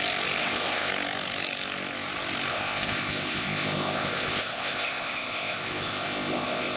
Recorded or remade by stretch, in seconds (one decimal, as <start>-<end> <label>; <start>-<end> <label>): 0.0-0.4 recorded; 0.4-0.9 remade; 0.9-2.5 recorded; 2.5-6.8 remade